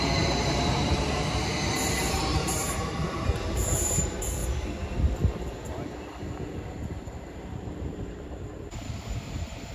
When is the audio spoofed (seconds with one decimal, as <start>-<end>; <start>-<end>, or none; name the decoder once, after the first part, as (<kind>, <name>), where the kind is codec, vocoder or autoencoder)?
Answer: 0.0-4.4 (vocoder, BigVGAN v2); 6.7-9.7